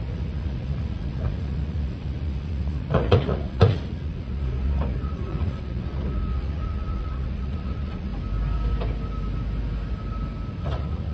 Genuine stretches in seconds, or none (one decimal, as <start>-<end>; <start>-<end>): 8.1-10.6